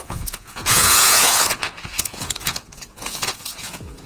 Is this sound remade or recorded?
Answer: remade